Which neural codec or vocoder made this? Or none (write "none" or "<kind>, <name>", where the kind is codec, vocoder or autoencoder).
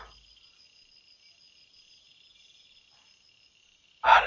none